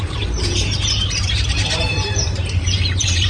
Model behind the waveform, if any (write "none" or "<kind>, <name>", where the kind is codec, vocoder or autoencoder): vocoder, BigVGAN v2